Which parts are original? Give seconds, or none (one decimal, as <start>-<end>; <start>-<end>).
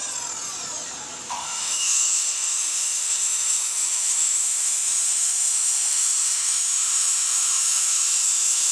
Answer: 0.0-1.3